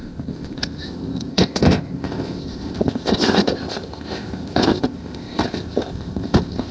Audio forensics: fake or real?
fake